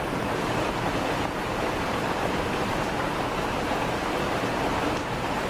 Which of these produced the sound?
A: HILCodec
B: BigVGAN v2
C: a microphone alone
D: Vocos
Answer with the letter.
B